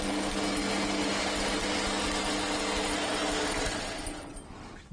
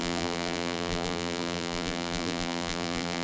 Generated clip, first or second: second